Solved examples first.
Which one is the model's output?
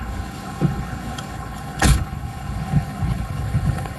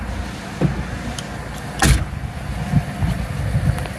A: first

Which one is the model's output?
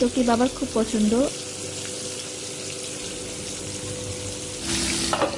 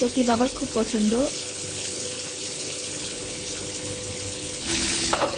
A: second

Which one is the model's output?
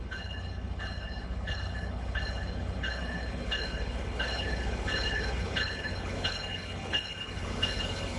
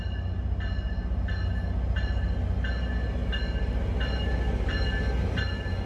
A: first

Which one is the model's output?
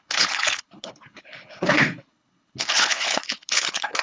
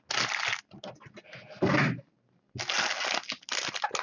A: first